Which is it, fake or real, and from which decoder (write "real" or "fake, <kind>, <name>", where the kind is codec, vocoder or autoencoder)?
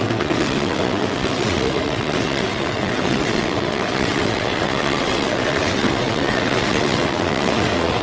fake, vocoder, WaveNeXt